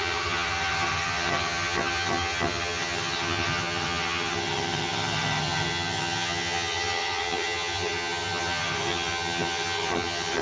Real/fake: fake